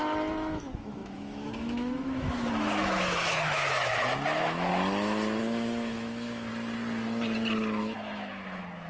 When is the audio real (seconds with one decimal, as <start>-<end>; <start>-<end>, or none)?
4.7-5.4; 6.5-7.8